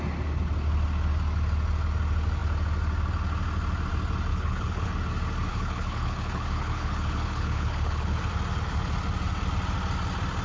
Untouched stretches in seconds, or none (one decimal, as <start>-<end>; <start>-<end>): 0.0-4.3; 4.9-5.5; 8.3-10.4